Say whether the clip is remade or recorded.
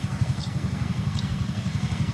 remade